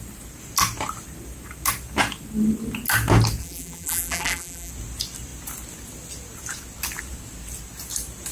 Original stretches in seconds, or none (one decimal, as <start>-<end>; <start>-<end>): 0.0-3.4; 4.7-8.3